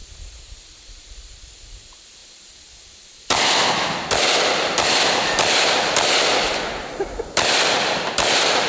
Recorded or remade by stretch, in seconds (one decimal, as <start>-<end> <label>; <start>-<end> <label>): 0.0-8.7 recorded